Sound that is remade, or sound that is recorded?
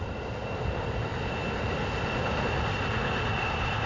recorded